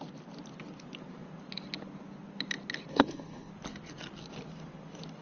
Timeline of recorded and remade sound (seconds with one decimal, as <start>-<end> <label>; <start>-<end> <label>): 0.0-2.9 recorded; 2.9-3.5 remade; 3.5-5.2 recorded